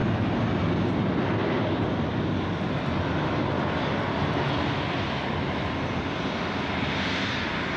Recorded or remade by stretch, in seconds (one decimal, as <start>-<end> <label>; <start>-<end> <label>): 0.0-7.8 recorded

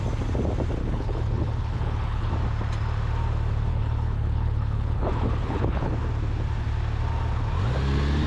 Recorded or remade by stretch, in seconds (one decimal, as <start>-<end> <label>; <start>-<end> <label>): 0.0-0.8 recorded; 0.8-2.3 remade; 2.3-3.7 recorded; 3.7-5.9 remade; 5.9-8.3 recorded

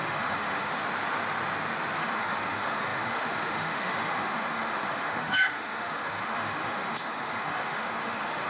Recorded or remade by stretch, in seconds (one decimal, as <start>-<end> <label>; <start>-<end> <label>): 0.0-0.8 remade; 0.8-2.0 recorded; 2.0-8.5 remade

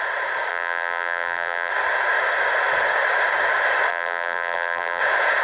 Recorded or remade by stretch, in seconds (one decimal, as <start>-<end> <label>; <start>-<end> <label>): 0.0-0.5 recorded; 0.5-1.7 remade; 1.7-3.9 recorded; 3.9-5.0 remade; 5.0-5.4 recorded

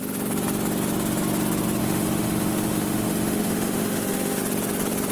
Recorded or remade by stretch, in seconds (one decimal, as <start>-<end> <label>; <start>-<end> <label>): 0.0-1.8 recorded; 1.8-4.4 remade; 4.4-5.1 recorded